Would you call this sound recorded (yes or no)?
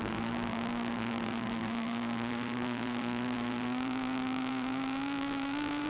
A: no